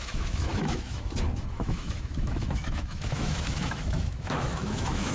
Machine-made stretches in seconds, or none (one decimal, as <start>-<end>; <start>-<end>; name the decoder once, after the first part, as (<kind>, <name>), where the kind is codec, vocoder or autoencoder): 0.0-5.1 (autoencoder, DAC-VAE)